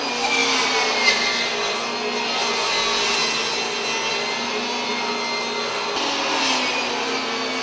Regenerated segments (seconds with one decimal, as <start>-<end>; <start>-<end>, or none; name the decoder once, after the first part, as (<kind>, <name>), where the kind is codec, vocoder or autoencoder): none